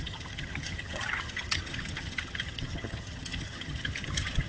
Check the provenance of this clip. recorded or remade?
remade